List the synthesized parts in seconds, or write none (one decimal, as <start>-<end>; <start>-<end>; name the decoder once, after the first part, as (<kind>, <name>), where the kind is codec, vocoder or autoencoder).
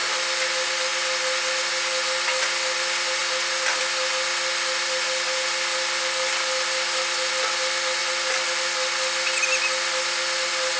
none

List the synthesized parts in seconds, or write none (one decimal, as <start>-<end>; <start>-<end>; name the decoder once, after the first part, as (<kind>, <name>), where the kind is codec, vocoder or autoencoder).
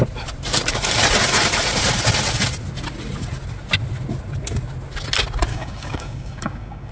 5.5-6.9 (codec, DAC)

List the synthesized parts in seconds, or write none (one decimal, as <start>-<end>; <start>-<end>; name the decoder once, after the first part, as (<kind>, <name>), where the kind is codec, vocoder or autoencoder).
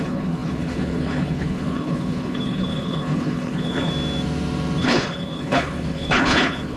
0.0-3.9 (codec, HILCodec); 4.8-6.8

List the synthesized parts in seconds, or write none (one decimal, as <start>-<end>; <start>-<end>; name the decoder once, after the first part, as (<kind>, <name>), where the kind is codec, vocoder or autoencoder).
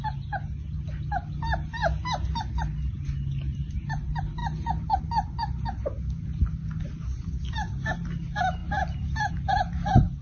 none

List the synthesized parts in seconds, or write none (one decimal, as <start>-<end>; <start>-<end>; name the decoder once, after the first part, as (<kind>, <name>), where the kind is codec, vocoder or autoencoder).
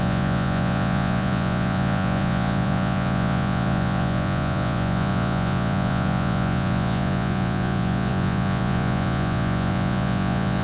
0.0-10.6 (vocoder, Vocos)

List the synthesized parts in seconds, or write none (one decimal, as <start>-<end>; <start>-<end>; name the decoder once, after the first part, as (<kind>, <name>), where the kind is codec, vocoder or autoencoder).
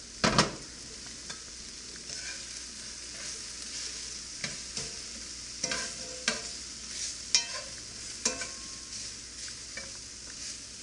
none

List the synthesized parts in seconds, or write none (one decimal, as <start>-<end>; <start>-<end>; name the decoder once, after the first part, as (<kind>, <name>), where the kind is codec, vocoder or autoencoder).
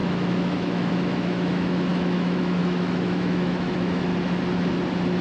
0.0-4.1 (autoencoder, DAC-VAE)